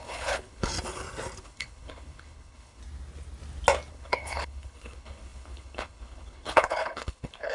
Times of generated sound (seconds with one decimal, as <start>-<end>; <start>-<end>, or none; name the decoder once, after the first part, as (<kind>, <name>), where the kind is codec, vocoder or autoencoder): 0.0-0.7 (codec, HILCodec); 1.4-2.8; 3.9-7.5